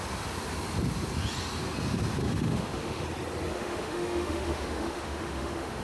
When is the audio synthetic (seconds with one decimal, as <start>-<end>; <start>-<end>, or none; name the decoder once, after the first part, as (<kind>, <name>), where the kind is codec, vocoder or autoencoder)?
2.2-3.0 (autoencoder, DAC-VAE); 3.5-5.8